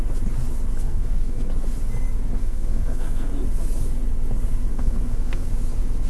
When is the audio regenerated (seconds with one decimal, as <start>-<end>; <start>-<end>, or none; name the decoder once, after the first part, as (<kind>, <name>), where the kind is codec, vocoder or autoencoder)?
0.8-1.5 (codec, SNAC); 2.4-3.3; 4.7-5.5

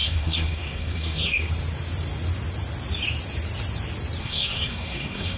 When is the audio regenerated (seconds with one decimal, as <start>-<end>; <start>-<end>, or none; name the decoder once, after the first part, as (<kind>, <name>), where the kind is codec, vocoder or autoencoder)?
0.0-1.5 (codec, SNAC); 4.2-5.4

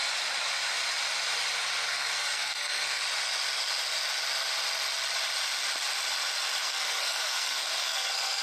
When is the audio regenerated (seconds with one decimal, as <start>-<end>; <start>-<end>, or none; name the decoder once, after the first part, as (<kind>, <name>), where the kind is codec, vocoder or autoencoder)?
1.9-3.0 (codec, SNAC); 6.6-8.4

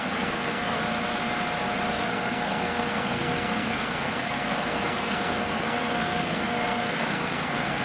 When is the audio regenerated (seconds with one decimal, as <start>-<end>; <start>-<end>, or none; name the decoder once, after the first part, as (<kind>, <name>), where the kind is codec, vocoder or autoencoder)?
0.0-0.8 (codec, SNAC); 1.9-7.8

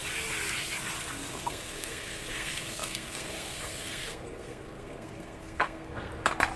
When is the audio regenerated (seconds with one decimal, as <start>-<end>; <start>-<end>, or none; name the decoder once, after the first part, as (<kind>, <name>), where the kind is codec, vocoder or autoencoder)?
1.3-6.1 (codec, SNAC)